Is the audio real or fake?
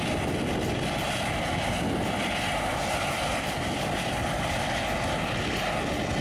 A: real